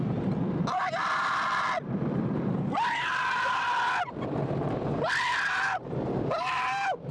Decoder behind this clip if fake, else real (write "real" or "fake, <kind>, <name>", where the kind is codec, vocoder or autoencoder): fake, vocoder, BigVGAN v2